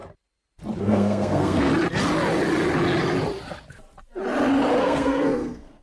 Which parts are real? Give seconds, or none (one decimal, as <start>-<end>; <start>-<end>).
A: 0.0-0.8; 1.7-4.8